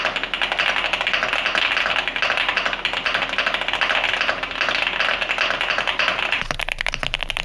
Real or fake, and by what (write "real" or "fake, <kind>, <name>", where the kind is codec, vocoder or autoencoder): real